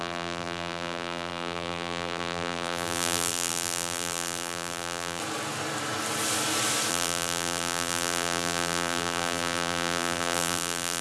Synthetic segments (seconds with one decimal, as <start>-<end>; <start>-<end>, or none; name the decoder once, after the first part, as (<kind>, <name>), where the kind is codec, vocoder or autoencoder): 0.0-5.2 (vocoder, BigVGAN v2); 6.9-11.0